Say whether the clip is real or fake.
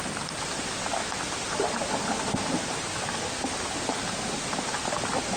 real